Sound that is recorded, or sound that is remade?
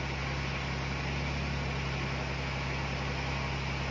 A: recorded